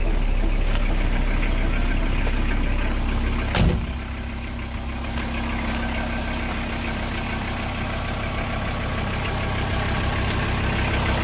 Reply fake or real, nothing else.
real